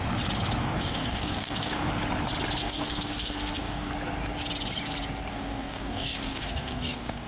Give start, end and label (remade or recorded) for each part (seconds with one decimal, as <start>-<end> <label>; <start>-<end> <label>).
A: 0.0-0.6 recorded; 0.6-1.9 remade; 1.9-2.6 recorded; 2.6-3.9 remade; 3.9-5.3 recorded; 5.3-7.3 remade